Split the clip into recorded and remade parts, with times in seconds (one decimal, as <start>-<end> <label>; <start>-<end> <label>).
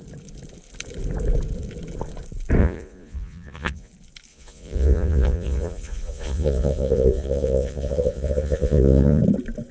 0.0-2.6 recorded; 2.6-3.9 remade; 3.9-4.3 recorded; 4.3-9.2 remade; 9.2-9.7 recorded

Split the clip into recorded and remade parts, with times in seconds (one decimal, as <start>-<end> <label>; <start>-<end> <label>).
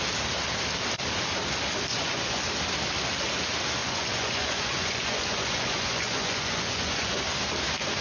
0.0-1.9 recorded; 1.9-2.4 remade; 2.4-3.8 recorded; 3.8-7.2 remade; 7.2-8.0 recorded